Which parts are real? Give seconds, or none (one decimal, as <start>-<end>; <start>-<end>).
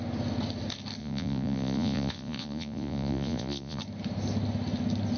0.0-1.0; 3.8-5.2